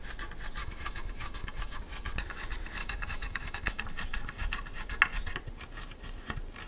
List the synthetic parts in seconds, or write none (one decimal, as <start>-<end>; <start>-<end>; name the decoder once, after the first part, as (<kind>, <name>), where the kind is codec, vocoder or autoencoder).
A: 0.6-1.8 (autoencoder, DAC-VAE); 2.8-3.8